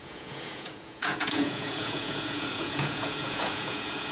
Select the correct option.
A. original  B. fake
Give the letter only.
B